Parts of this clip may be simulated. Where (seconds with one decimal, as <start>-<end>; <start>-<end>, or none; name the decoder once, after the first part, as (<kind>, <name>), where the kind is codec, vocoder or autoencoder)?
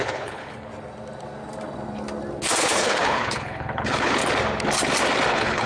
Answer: 0.0-0.7 (codec, HILCodec); 2.6-4.2; 5.3-5.7